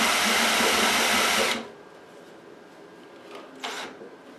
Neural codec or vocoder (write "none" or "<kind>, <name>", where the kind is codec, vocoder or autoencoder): none